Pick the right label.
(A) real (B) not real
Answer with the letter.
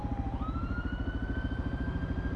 A